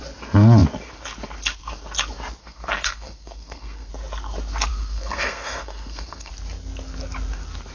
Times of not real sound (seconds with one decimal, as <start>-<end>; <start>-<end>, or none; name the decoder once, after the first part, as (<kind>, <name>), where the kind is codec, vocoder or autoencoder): 2.4-3.9 (codec, SNAC); 4.7-6.3